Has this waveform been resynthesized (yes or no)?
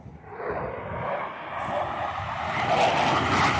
no